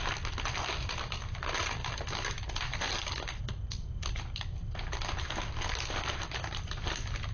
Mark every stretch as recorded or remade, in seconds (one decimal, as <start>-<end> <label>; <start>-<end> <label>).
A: 0.0-7.3 recorded